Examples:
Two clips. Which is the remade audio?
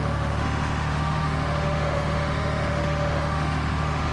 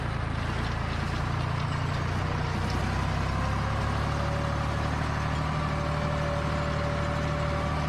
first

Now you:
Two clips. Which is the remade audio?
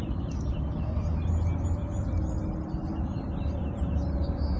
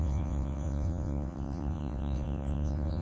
second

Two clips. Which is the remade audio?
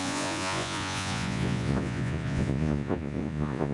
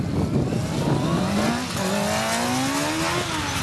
first